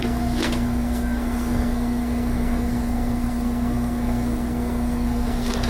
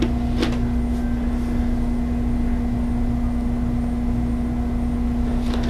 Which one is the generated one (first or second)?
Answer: first